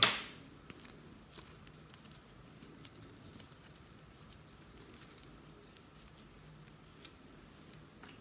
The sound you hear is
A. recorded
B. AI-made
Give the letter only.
A